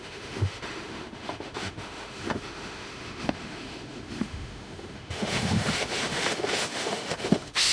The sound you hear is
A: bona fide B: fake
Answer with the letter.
B